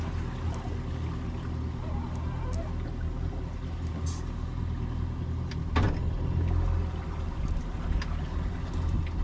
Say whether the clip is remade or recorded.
recorded